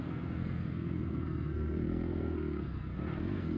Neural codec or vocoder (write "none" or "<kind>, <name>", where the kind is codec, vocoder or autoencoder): codec, SNAC